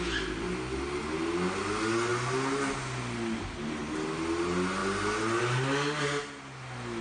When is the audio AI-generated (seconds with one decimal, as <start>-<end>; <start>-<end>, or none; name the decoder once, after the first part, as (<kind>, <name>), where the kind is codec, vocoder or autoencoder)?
none